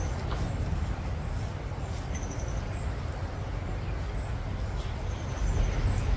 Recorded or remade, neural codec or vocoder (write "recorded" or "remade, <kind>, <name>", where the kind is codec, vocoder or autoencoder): recorded